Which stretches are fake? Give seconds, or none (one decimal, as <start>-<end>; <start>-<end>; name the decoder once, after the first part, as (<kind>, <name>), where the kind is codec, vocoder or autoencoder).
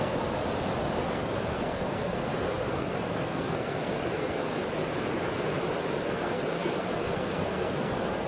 0.0-0.4 (codec, SNAC); 1.0-4.6; 6.0-8.3